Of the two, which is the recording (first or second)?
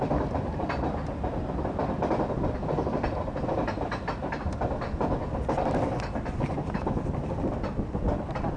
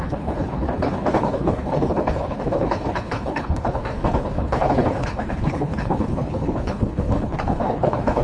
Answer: first